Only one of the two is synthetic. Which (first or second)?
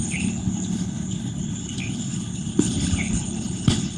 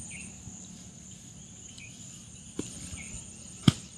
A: first